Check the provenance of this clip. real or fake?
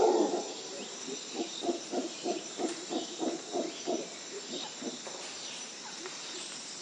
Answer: fake